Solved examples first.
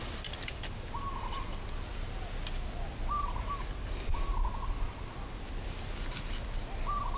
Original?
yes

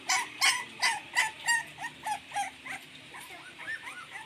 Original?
yes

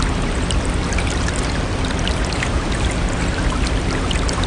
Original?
yes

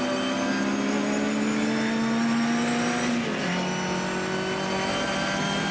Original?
yes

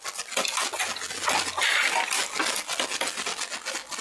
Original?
yes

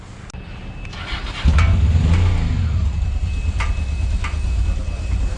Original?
yes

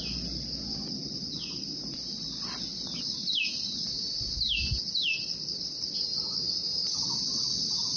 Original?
yes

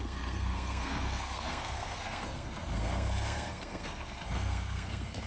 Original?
no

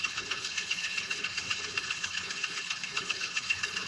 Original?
no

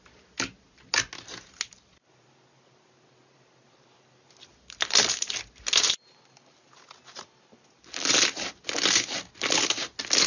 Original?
yes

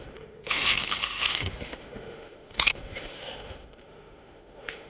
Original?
no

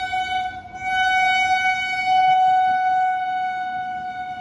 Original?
yes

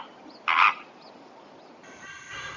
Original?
yes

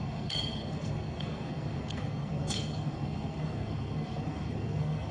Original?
no